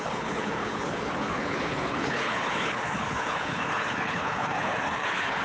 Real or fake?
fake